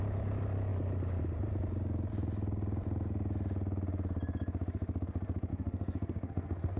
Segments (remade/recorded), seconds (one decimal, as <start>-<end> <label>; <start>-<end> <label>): 0.0-5.5 recorded; 5.5-6.8 remade